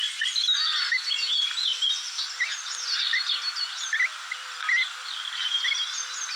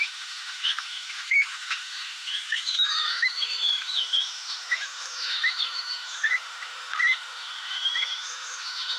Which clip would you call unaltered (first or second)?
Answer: first